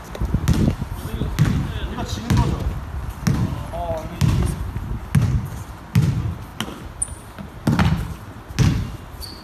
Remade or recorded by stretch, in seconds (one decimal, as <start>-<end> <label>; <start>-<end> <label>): 0.0-9.4 recorded